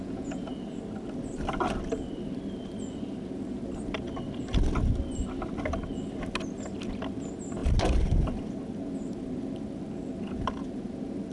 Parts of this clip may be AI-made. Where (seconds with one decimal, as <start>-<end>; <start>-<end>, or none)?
0.0-0.5